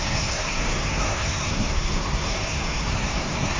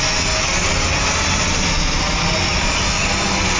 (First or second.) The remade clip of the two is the first